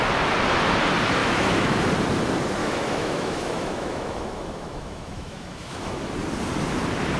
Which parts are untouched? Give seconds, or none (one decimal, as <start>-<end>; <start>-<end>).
0.0-1.2; 1.8-2.6; 6.1-7.2

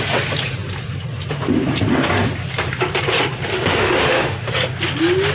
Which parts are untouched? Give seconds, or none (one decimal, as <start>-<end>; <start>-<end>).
0.0-3.5; 4.5-5.3

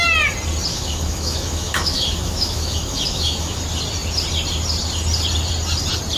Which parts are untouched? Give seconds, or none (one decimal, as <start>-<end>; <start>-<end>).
0.0-0.7; 3.6-6.2